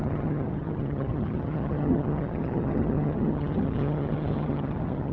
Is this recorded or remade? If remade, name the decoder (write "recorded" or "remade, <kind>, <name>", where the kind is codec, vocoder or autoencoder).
remade, vocoder, HiFi-GAN